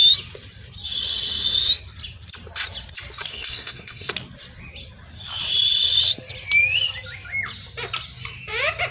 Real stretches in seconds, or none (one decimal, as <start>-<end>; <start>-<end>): 0.0-3.3; 4.1-8.9